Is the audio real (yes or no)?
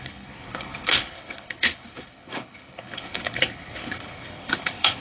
no